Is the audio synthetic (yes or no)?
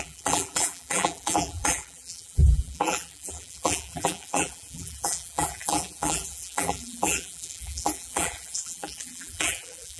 yes